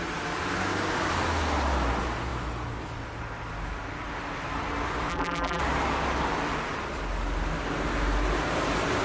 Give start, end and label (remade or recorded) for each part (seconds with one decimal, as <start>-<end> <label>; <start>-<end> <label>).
0.0-5.1 recorded; 5.1-5.6 remade; 5.6-9.0 recorded